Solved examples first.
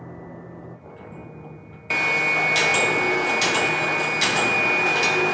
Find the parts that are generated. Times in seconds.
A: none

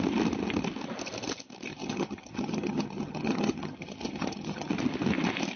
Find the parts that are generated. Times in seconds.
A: 1.7-4.7 (vocoder, HiFi-GAN)

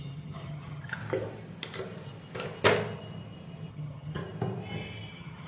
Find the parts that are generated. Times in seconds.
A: 0.0-1.0 (vocoder, HiFi-GAN); 3.7-4.2; 5.1-5.5